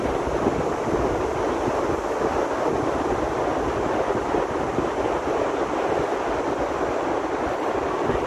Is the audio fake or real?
real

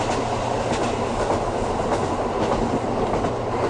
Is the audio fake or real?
real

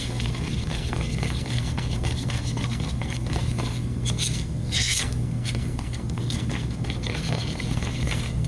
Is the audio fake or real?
fake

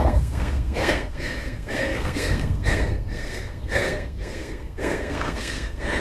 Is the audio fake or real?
fake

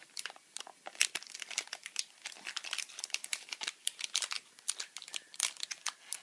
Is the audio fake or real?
fake